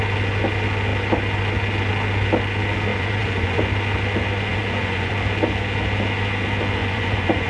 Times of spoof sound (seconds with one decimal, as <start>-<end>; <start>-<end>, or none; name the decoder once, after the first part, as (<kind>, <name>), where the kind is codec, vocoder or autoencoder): 2.9-3.6 (vocoder, Vocos); 4.5-5.1; 6.8-7.5